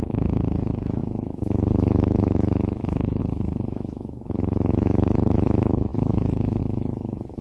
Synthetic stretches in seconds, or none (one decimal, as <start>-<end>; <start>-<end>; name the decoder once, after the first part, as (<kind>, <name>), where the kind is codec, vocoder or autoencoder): 0.0-7.4 (autoencoder, DAC-VAE)